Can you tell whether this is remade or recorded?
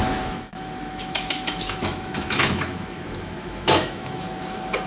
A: remade